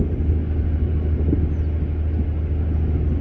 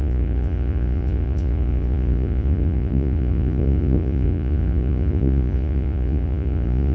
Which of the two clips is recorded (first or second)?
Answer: first